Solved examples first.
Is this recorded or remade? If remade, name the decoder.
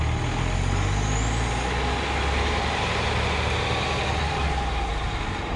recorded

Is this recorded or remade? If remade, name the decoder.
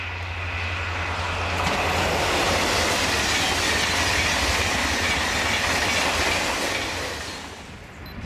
recorded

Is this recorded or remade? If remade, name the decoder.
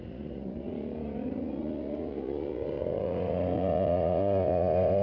remade, vocoder, Vocos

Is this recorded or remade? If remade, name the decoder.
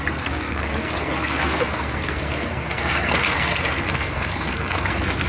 remade, codec, SNAC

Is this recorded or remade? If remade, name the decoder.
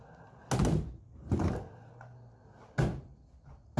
recorded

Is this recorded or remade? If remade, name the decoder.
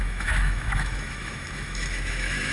remade, autoencoder, DAC-VAE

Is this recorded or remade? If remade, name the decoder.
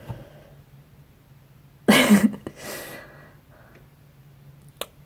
recorded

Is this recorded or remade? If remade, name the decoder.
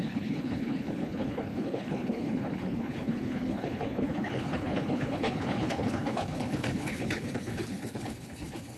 remade, codec, HILCodec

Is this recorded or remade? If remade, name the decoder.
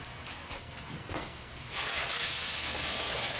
remade, codec, SNAC